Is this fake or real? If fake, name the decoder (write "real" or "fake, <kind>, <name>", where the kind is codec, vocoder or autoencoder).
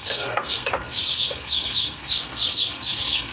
fake, codec, SNAC